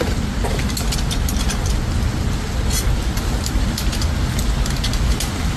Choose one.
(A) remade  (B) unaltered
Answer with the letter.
B